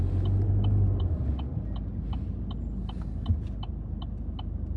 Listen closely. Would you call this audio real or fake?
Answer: real